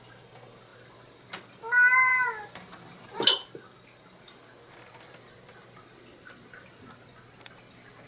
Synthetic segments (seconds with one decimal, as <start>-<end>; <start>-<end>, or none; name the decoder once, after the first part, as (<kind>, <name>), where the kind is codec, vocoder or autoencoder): none